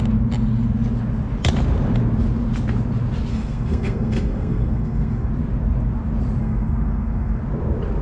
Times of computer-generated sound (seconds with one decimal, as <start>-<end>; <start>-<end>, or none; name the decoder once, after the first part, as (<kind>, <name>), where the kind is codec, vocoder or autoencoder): 3.3-5.3 (codec, SNAC); 6.4-7.4